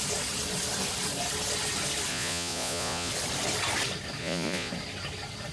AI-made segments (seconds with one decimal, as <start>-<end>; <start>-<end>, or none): 2.1-3.1; 4.2-4.7